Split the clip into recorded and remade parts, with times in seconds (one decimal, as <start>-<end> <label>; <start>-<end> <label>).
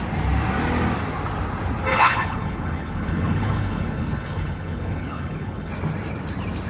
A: 0.0-1.9 recorded; 1.9-5.7 remade; 5.7-6.7 recorded